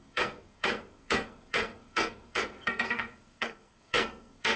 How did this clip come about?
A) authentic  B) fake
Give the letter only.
B